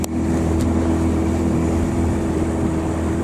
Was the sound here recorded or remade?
recorded